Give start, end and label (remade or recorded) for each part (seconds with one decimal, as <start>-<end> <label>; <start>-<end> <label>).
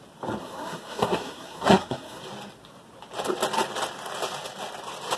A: 0.0-0.4 recorded; 0.4-2.2 remade; 2.2-5.2 recorded